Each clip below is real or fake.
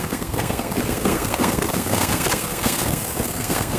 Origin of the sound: fake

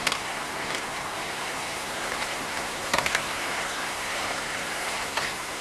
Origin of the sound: fake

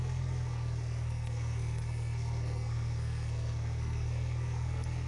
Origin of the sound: fake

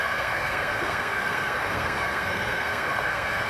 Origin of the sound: fake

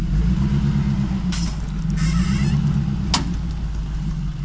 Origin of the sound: real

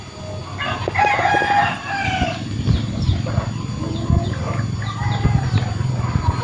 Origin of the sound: real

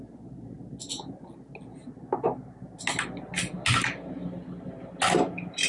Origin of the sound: real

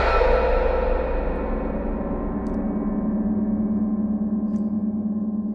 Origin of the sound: real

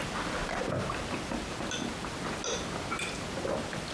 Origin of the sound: real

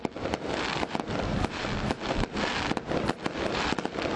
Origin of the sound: real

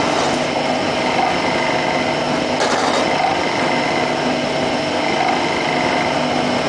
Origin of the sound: real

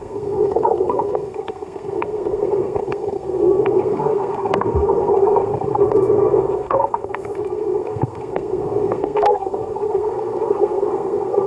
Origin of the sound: fake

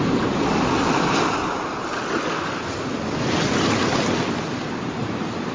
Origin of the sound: real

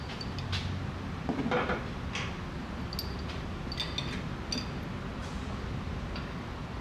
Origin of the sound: real